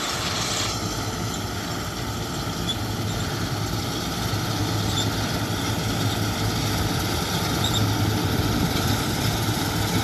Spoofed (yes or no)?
no